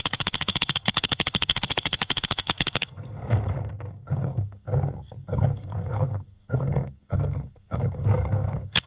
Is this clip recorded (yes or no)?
no